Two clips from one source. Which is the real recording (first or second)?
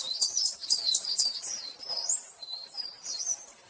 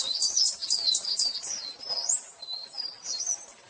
second